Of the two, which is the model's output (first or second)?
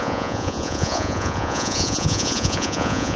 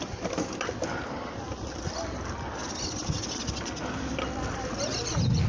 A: first